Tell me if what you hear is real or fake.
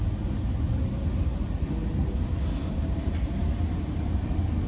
real